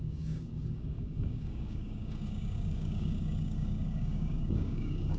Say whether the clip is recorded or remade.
remade